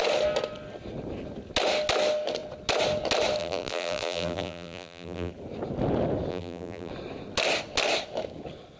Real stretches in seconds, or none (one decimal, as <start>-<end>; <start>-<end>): 0.0-3.4; 5.3-6.3; 6.9-8.8